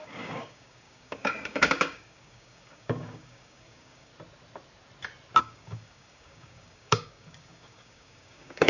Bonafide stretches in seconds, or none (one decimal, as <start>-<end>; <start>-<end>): 4.1-5.4